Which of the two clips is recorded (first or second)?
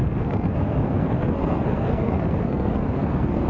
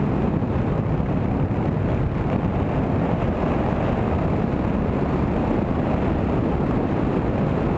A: second